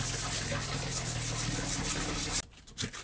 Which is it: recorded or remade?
recorded